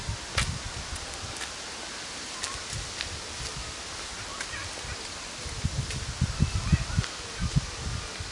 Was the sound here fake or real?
real